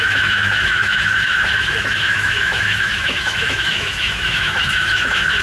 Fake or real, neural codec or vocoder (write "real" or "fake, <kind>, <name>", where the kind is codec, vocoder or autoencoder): fake, autoencoder, DAC-VAE